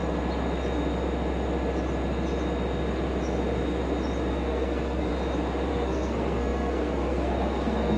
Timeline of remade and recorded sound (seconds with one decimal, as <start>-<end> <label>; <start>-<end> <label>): 0.0-4.3 recorded; 4.3-5.1 remade; 5.1-5.7 recorded; 5.7-8.0 remade